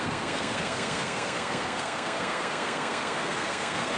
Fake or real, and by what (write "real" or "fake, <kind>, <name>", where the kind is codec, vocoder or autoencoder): fake, codec, SNAC